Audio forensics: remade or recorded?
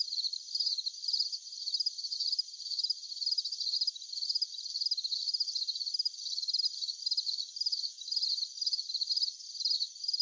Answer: recorded